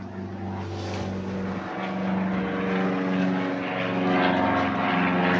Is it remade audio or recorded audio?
recorded